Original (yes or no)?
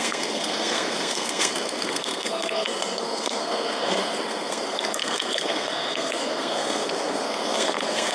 no